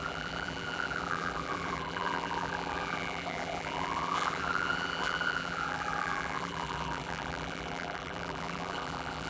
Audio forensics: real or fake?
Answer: fake